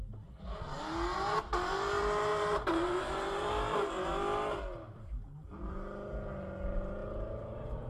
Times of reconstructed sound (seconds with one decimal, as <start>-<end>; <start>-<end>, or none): 2.3-3.5; 7.0-7.9